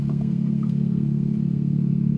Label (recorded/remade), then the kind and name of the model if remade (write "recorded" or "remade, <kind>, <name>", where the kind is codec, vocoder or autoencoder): remade, codec, SNAC